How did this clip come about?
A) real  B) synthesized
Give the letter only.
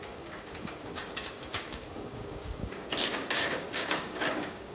B